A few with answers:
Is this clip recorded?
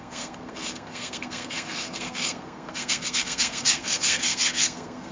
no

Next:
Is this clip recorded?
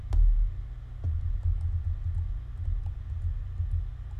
yes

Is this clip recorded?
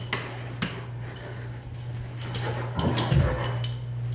yes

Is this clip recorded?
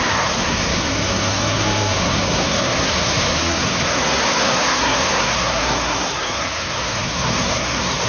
no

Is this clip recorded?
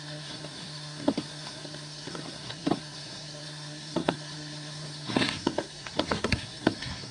no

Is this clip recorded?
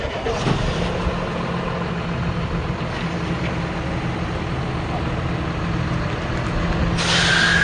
yes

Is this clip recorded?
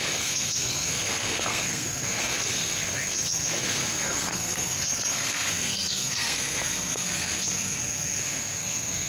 no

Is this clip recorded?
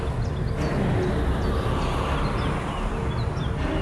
yes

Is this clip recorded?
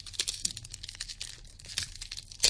yes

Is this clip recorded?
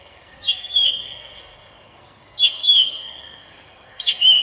no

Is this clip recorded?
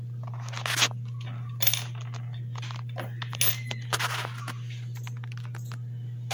yes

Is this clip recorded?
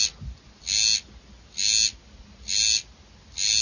yes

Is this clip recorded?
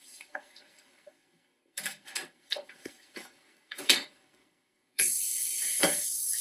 no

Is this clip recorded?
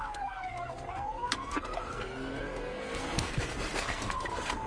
no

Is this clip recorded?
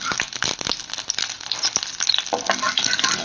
yes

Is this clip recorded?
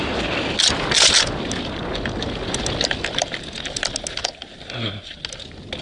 yes